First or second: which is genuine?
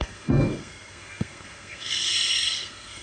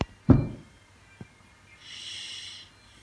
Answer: second